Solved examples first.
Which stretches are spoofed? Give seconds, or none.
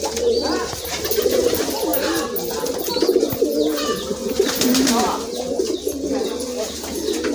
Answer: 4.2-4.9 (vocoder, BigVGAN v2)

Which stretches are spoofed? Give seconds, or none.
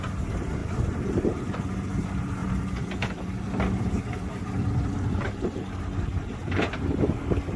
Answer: 0.6-1.3 (vocoder, BigVGAN v2); 2.4-7.0